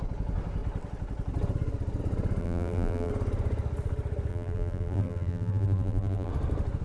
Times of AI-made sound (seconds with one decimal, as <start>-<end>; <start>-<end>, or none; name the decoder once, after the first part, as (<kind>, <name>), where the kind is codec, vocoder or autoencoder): 2.4-3.1 (vocoder, BigVGAN v2); 4.3-6.3

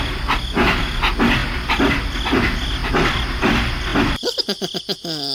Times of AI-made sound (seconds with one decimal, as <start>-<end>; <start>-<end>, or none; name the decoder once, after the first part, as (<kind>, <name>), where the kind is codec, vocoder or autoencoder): none